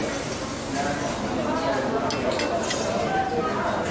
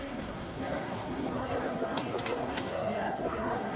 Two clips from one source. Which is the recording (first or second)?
first